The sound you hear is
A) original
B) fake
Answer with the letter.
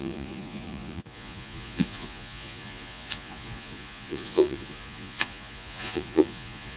B